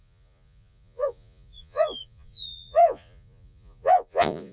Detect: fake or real fake